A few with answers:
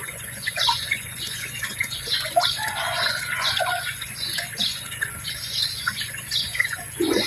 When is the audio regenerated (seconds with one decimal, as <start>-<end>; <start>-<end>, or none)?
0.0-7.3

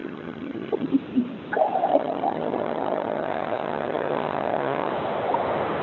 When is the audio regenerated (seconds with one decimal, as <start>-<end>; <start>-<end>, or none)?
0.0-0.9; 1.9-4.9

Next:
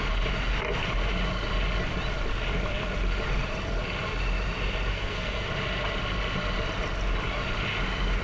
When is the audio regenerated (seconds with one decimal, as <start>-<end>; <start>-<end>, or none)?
4.9-5.5